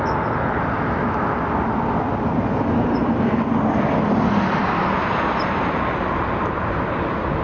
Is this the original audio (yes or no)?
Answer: yes